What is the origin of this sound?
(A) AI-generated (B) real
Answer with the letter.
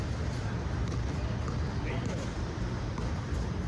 A